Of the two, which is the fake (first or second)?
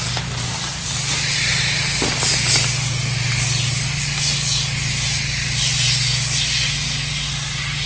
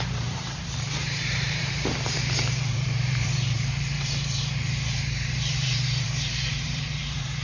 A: second